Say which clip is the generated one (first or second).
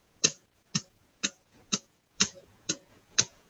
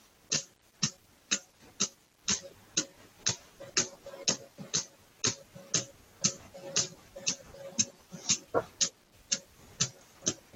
first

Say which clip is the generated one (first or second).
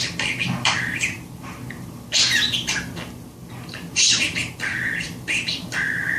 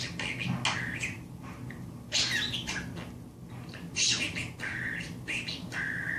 first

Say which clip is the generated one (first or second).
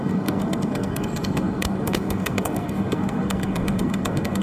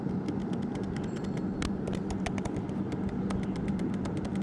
first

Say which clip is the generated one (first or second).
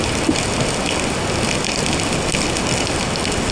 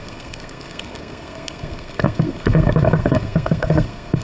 second